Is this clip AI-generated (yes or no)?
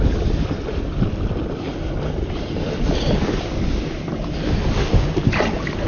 no